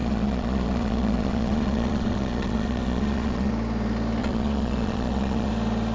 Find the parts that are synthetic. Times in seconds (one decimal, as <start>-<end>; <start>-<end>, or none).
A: 0.0-3.5; 4.2-5.5